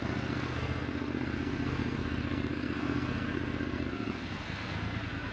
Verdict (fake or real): fake